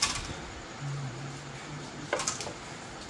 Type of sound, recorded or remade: recorded